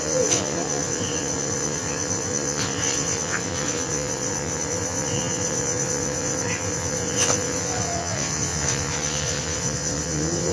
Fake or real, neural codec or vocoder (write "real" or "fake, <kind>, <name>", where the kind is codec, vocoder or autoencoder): fake, vocoder, WaveNeXt